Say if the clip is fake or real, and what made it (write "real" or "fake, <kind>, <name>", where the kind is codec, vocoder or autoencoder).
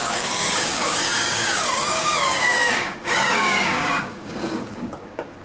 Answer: fake, codec, DAC